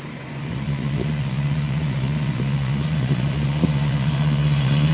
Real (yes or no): no